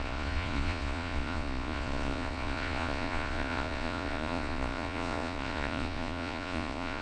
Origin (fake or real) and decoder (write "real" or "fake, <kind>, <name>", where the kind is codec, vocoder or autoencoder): fake, vocoder, Vocos